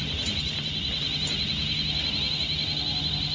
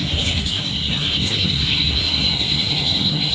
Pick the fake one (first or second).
second